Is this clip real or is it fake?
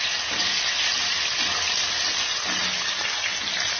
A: real